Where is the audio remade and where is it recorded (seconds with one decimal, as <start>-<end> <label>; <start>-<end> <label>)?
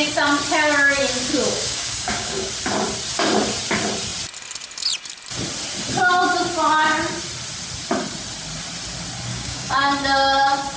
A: 0.0-1.3 recorded; 1.3-2.5 remade; 2.5-9.3 recorded; 9.3-9.9 remade; 9.9-10.8 recorded